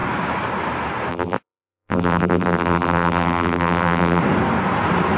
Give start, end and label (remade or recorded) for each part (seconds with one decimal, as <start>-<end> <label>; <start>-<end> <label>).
0.0-1.1 recorded; 1.1-4.2 remade; 4.2-5.2 recorded